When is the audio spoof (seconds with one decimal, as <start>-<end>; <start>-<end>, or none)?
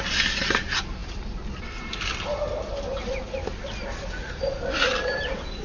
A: none